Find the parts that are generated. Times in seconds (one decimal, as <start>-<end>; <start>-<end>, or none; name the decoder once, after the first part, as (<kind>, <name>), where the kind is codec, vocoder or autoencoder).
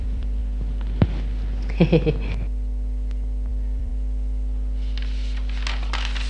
0.0-0.4 (vocoder, BigVGAN v2); 3.5-3.9